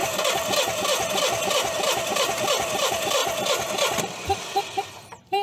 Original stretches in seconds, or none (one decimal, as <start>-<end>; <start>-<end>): 0.0-2.5; 3.2-4.0